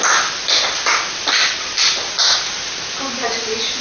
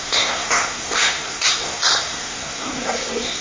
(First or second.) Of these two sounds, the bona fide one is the first